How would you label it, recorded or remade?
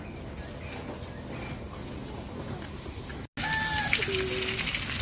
recorded